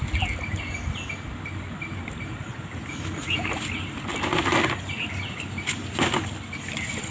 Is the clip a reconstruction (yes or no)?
no